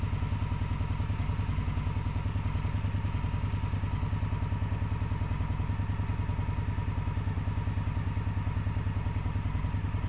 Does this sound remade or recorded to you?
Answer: recorded